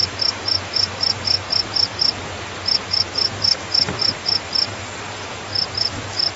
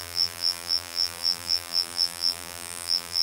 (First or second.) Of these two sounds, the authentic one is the first